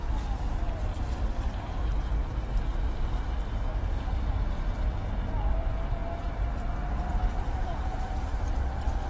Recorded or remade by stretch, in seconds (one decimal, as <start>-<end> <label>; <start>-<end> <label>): 0.0-1.9 remade; 1.9-5.4 recorded; 5.4-9.1 remade